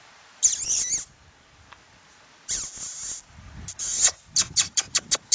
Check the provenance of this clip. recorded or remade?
recorded